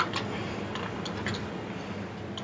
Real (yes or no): yes